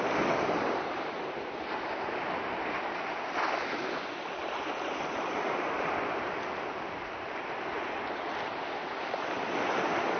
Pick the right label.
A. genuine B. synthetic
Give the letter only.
A